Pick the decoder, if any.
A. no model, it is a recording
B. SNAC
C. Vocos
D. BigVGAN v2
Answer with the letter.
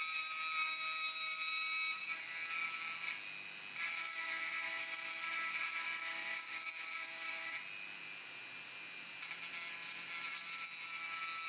A